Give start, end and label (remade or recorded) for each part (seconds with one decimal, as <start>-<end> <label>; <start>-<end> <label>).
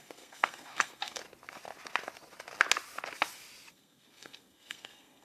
0.0-1.2 remade; 1.2-3.7 recorded; 3.7-5.2 remade